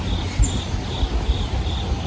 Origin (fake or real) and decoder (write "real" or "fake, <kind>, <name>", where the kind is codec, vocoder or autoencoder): real